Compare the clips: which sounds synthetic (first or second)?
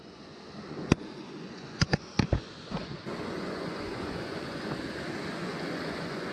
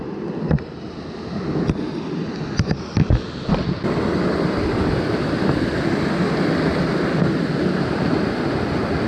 first